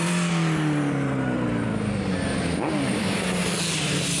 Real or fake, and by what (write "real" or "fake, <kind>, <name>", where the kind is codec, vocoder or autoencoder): real